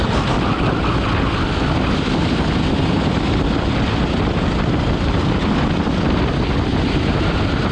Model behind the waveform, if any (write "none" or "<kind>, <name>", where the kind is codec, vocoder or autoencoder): none